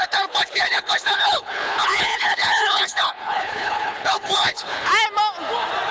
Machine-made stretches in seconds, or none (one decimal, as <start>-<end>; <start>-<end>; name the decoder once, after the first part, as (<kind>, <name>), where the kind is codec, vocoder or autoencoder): 0.0-4.9 (codec, HILCodec)

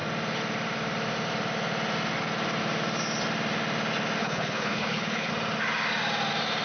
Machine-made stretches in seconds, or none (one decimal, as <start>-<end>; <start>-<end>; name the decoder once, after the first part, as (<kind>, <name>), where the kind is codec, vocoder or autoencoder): 4.2-5.3 (codec, HILCodec)

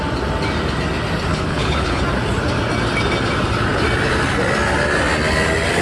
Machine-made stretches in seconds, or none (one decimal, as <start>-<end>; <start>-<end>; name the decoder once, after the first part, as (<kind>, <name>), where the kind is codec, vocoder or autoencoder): 1.3-2.0 (codec, HILCodec)

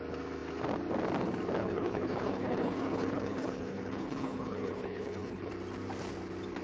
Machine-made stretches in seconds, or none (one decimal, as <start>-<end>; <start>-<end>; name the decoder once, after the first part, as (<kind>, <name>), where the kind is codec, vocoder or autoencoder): 1.6-5.5 (codec, HILCodec)

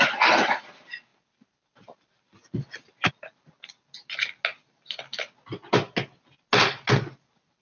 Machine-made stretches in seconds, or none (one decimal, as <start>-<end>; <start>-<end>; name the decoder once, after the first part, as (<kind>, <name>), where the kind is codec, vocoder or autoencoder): none

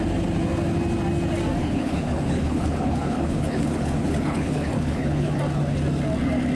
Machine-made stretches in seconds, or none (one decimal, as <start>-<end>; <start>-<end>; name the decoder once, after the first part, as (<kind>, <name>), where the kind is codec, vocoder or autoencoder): 1.6-5.3 (codec, HILCodec)

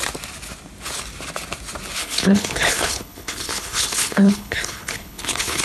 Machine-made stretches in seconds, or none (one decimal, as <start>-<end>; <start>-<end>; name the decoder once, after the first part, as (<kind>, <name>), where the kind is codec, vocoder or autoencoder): 2.0-5.6 (codec, HILCodec)